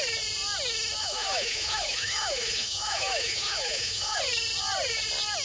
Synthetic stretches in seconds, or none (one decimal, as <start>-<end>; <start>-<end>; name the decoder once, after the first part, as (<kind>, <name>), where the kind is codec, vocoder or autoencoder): 1.0-4.2 (autoencoder, DAC-VAE)